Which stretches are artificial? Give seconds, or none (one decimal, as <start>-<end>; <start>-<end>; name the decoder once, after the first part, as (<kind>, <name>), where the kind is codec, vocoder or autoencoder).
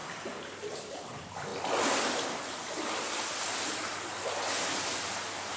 none